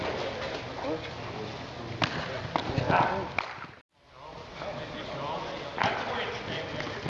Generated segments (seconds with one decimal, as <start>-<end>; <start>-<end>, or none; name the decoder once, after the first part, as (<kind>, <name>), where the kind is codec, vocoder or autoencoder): none